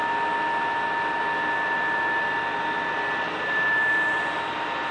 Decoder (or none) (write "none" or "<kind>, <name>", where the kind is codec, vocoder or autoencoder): none